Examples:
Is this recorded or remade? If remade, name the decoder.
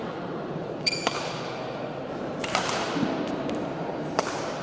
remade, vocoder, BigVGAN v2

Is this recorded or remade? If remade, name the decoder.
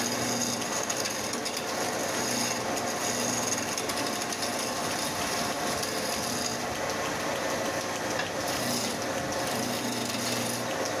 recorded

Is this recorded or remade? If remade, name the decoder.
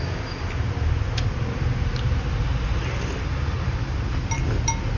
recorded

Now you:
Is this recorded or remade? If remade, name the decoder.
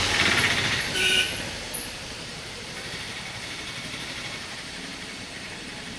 remade, vocoder, BigVGAN v2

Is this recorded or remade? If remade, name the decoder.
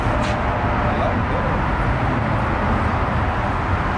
recorded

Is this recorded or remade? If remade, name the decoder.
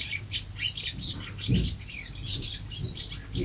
recorded